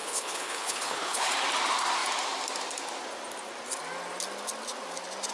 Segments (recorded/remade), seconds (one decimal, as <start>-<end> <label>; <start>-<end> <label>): 0.0-1.3 remade; 1.3-5.3 recorded